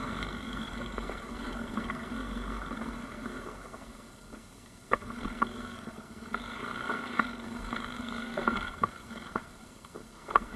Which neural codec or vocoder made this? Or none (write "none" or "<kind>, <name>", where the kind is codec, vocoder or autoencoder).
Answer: codec, SNAC